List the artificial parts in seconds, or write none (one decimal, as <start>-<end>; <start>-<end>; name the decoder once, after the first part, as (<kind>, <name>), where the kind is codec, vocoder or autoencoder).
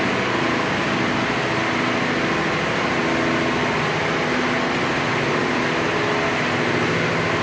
none